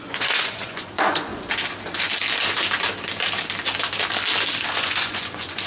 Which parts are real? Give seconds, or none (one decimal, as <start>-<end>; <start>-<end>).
1.3-4.7